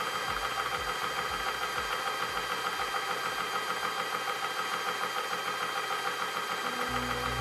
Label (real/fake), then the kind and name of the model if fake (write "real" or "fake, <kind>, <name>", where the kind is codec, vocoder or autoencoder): real